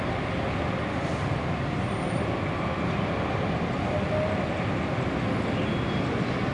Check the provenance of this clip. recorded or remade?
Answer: recorded